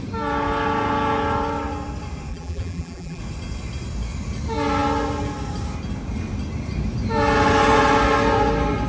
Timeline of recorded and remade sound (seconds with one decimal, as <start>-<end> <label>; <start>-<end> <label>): 0.0-2.3 recorded; 2.3-3.2 remade; 3.2-8.9 recorded